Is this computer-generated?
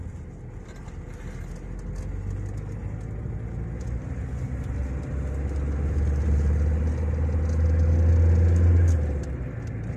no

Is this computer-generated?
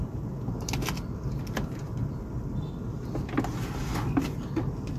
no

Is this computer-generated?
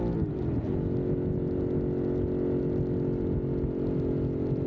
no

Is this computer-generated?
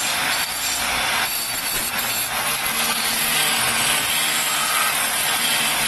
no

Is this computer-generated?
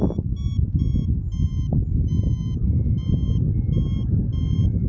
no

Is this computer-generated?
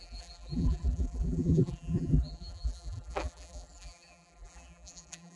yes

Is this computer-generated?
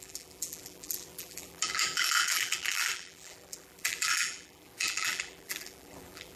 yes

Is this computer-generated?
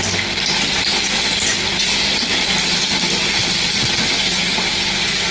no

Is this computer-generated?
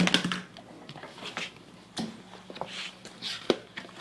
no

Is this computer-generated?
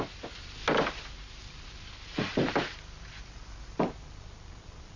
no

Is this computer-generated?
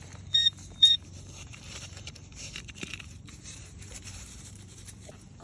yes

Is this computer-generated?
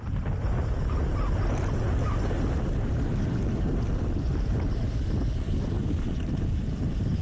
no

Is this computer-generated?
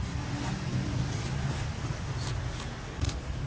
no